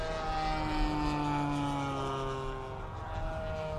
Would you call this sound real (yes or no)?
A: yes